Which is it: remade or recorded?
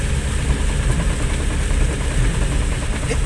recorded